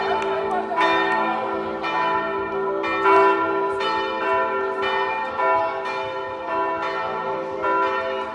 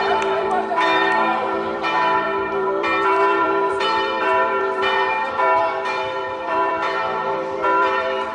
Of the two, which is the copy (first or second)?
second